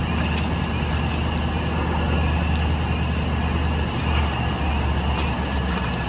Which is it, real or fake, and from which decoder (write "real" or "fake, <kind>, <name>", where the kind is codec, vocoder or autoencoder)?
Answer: real